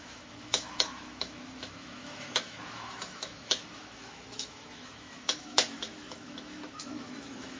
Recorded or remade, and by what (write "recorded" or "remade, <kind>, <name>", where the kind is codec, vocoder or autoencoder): remade, autoencoder, DAC-VAE